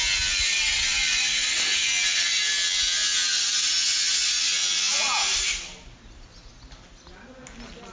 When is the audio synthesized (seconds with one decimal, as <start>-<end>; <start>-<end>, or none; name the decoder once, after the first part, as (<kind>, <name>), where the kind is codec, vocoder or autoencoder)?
none